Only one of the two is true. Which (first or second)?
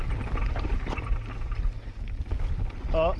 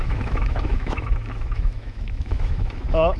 first